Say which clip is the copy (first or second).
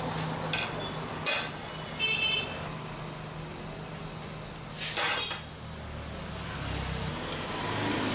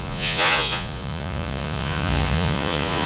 second